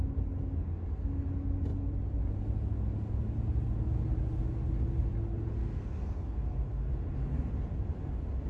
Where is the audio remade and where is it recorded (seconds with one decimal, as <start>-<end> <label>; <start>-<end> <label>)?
0.0-5.6 recorded; 5.6-6.9 remade; 6.9-8.5 recorded